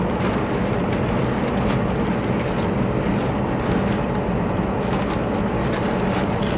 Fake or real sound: real